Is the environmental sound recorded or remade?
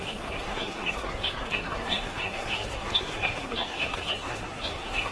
remade